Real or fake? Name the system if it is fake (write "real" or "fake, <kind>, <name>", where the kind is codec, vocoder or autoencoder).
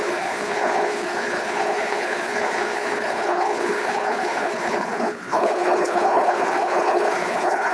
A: fake, codec, HILCodec